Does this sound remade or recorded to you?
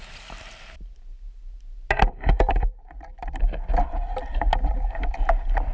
recorded